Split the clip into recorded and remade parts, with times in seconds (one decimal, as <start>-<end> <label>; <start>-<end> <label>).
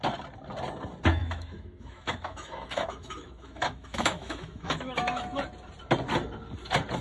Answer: 0.0-1.2 recorded; 1.2-5.4 remade; 5.4-7.0 recorded